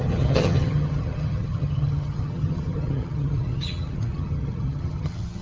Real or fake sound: fake